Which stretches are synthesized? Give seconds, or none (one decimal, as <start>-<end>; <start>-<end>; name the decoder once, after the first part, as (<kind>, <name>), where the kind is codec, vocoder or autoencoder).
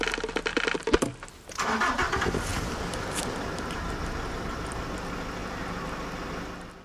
2.5-4.8 (vocoder, BigVGAN v2)